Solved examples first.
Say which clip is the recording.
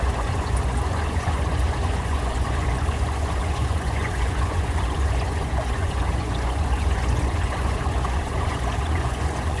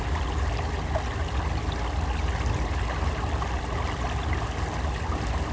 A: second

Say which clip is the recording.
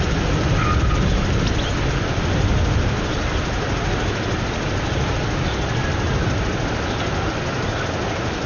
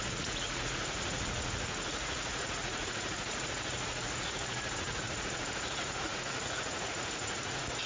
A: first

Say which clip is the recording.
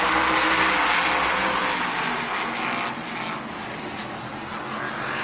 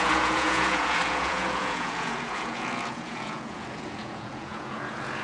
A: first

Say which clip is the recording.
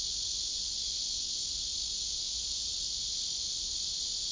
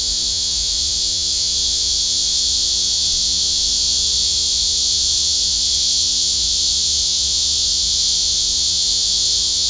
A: first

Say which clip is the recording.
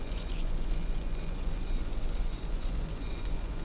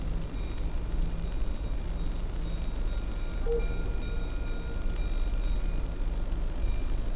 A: second